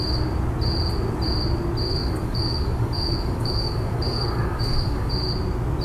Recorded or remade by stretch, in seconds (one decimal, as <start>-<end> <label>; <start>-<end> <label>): 0.0-2.0 recorded; 2.0-5.1 remade; 5.1-5.8 recorded

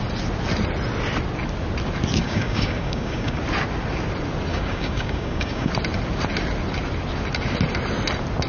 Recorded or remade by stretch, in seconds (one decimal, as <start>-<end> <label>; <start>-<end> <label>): 0.0-2.2 recorded; 2.2-3.4 remade; 3.4-4.5 recorded; 4.5-5.7 remade; 5.7-8.5 recorded

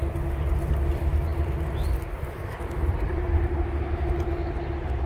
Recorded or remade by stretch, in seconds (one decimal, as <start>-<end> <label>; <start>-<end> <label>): 0.0-5.1 recorded

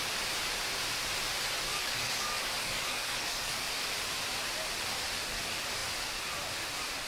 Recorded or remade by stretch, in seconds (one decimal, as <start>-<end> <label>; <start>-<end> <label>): 0.0-1.7 recorded; 1.7-3.8 remade; 3.8-7.1 recorded

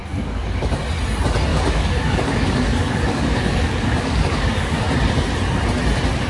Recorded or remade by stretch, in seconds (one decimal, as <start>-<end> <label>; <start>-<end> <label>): 0.0-0.8 remade; 0.8-1.5 recorded; 1.5-4.8 remade; 4.8-6.3 recorded

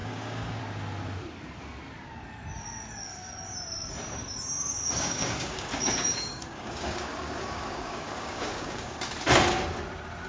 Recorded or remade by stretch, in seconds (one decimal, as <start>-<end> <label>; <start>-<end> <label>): 0.0-0.6 remade; 0.6-4.6 recorded; 4.6-9.0 remade; 9.0-10.3 recorded

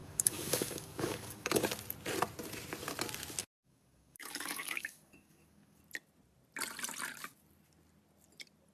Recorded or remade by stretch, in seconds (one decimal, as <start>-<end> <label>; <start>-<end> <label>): 0.0-1.6 remade; 1.6-3.4 recorded; 3.4-5.8 remade; 5.8-8.7 recorded